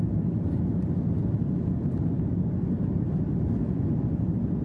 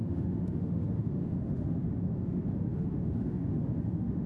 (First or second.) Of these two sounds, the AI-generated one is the second